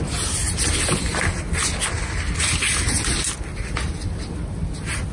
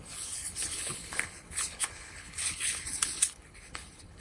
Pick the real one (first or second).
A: first